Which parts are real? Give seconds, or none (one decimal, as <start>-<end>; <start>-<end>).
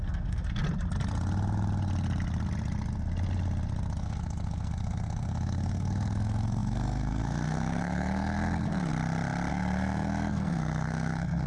0.6-4.0; 8.9-9.5